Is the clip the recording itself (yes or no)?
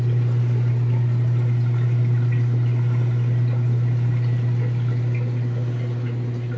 yes